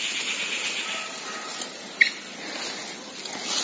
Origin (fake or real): real